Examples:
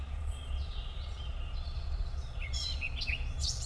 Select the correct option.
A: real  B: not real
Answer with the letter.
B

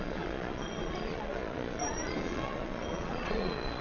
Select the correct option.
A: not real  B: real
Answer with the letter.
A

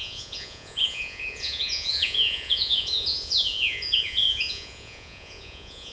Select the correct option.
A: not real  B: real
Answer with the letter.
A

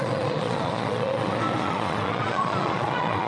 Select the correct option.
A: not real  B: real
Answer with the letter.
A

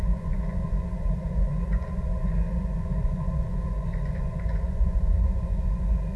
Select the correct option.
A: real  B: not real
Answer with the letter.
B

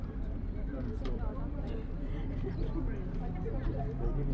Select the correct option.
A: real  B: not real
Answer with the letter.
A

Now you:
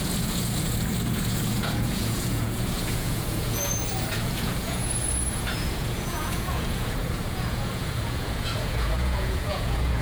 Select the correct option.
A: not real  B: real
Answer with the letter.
A